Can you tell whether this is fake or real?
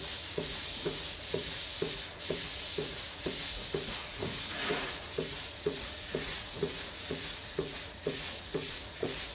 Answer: fake